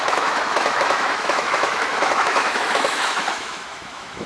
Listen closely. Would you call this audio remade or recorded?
remade